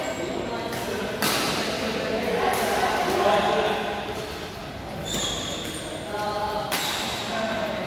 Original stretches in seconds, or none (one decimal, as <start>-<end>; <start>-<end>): 0.0-7.9